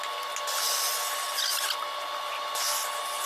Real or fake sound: real